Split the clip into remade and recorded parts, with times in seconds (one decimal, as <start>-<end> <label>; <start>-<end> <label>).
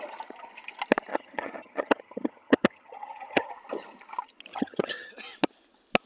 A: 0.0-1.1 recorded; 1.1-3.5 remade; 3.5-4.5 recorded; 4.5-5.1 remade; 5.1-6.1 recorded